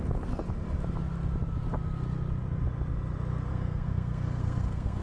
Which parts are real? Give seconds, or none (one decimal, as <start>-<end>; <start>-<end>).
0.0-3.5